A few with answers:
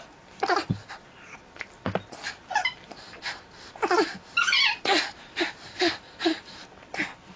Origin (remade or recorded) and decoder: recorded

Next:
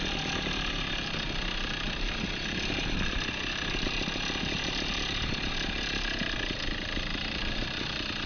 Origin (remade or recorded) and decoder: recorded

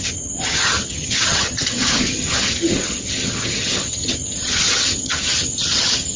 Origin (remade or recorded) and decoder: remade, vocoder, HiFi-GAN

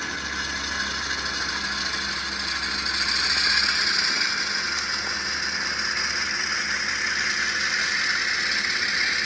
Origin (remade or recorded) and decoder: recorded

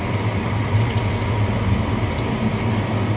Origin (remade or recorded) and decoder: recorded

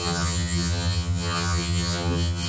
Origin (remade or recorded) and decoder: remade, vocoder, HiFi-GAN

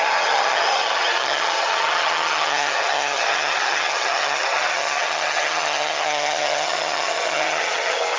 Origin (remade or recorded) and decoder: remade, vocoder, HiFi-GAN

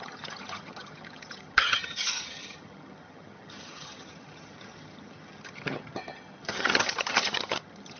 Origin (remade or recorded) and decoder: remade, vocoder, HiFi-GAN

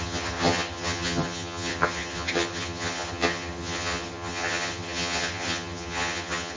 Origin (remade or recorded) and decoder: remade, vocoder, HiFi-GAN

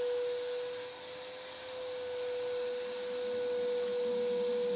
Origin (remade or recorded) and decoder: recorded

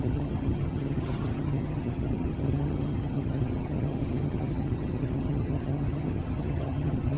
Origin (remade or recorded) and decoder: remade, vocoder, HiFi-GAN